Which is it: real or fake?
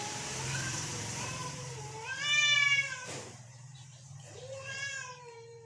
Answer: fake